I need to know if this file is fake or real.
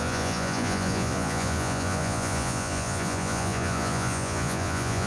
fake